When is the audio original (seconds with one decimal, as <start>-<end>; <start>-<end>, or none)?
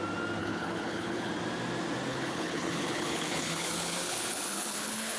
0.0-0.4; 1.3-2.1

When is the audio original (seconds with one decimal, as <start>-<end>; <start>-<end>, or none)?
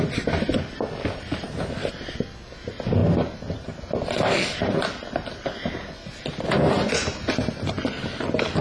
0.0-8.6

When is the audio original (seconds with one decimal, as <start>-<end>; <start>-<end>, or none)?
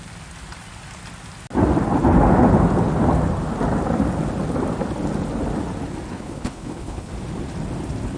0.0-6.1; 7.1-8.2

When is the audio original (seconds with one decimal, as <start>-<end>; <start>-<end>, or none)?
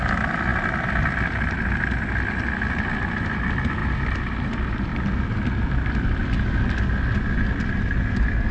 0.0-8.5